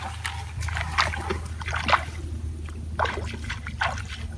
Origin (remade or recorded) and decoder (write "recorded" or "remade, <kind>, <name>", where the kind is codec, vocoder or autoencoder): recorded